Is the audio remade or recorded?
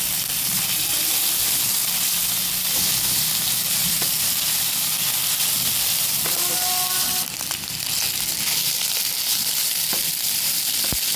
recorded